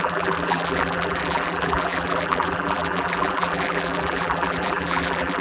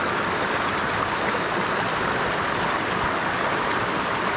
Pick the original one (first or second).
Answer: second